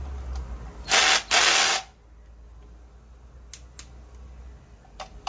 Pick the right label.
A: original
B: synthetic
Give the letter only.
A